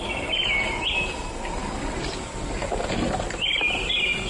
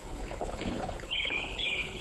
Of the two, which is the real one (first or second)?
first